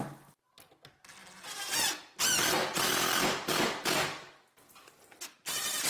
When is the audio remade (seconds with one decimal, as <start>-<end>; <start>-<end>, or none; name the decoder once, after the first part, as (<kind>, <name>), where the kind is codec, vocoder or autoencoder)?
none